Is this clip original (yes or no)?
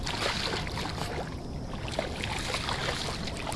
yes